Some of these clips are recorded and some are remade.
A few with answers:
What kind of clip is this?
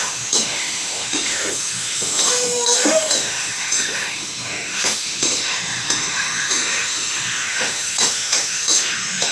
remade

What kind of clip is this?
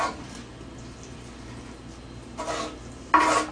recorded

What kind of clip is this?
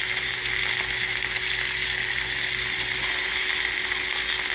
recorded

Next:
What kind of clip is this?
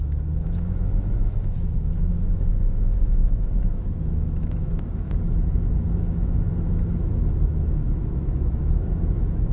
remade